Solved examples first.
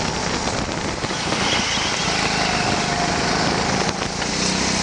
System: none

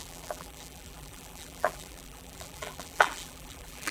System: vocoder, BigVGAN v2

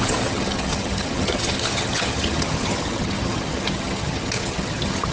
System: vocoder, HiFi-GAN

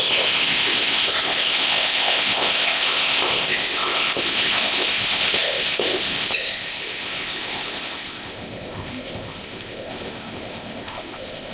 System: codec, ZipCodec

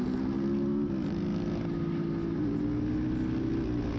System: none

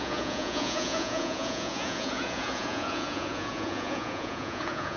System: vocoder, Vocos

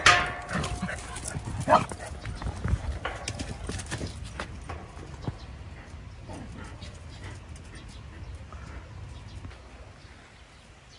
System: none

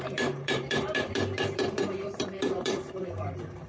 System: vocoder, BigVGAN v2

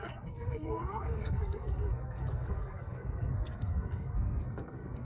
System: codec, SNAC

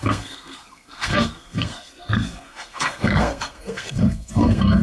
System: codec, SNAC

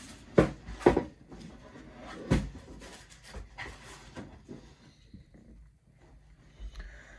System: none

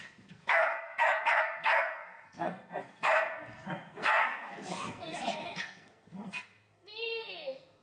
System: codec, SNAC